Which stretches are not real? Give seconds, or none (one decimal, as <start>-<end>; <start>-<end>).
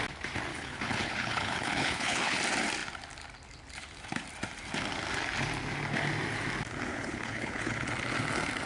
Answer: 0.5-2.4; 6.9-7.9